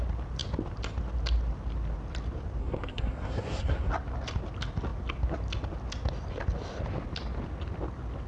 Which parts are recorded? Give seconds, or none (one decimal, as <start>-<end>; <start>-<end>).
0.0-2.6; 3.9-8.3

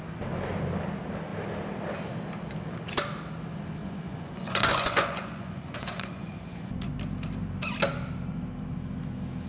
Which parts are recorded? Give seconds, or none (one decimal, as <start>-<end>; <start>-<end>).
0.0-3.8; 7.0-9.5

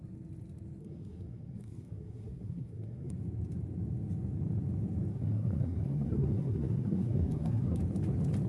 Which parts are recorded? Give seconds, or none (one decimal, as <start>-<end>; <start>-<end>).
0.0-0.8; 3.1-5.1; 7.8-8.5